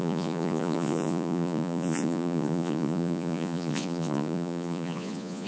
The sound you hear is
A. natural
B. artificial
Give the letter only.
B